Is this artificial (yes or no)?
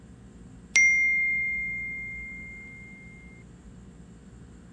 no